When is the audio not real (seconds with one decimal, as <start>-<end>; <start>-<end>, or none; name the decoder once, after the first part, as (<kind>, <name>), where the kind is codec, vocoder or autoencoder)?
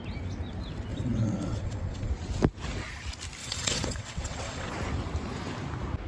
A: 0.9-2.1 (vocoder, WaveNeXt); 3.4-4.7